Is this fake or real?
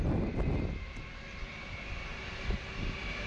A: real